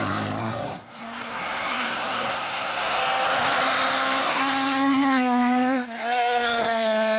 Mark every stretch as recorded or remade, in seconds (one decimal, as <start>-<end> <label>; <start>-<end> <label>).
0.0-0.4 recorded; 0.4-3.0 remade; 3.0-4.2 recorded; 4.2-7.2 remade